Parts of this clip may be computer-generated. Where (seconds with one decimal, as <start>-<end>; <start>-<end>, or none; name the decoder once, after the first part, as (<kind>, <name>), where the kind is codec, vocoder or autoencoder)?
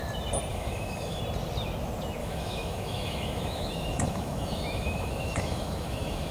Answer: 0.5-1.2 (autoencoder, DAC-VAE); 2.2-6.3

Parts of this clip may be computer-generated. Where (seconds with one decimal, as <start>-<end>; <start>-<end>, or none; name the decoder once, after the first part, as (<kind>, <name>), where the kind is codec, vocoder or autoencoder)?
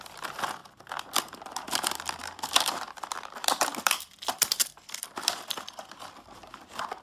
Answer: 2.2-6.4 (vocoder, BigVGAN v2)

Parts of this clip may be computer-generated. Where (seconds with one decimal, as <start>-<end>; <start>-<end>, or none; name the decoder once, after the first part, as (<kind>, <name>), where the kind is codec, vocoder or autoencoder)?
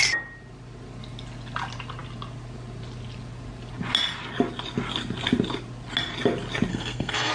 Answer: 6.7-7.3 (codec, SNAC)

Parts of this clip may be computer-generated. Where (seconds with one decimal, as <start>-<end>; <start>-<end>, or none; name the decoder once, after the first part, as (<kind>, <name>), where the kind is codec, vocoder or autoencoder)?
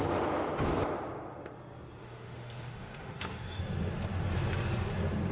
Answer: 2.0-3.6 (autoencoder, DAC-VAE)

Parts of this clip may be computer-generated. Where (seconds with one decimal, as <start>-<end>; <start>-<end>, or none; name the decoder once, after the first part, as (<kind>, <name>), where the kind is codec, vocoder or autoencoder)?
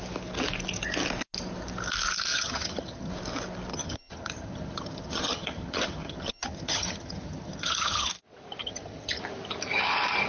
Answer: 2.3-3.1 (vocoder, HiFi-GAN); 3.7-8.1; 8.6-9.2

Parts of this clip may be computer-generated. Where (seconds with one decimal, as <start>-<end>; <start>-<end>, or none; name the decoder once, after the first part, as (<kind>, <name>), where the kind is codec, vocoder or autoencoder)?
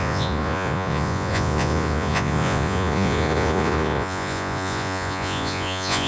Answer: 0.0-6.1 (vocoder, Vocos)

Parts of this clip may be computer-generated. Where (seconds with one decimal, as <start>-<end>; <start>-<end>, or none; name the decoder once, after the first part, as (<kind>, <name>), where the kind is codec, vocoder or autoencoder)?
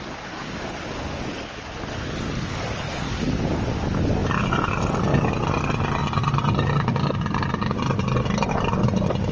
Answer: none